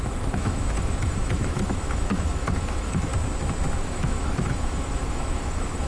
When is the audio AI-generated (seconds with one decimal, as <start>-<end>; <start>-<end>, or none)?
0.0-3.1; 3.8-5.9